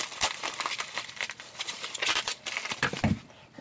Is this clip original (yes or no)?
yes